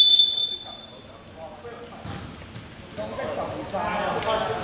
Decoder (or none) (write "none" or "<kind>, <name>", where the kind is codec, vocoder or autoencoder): none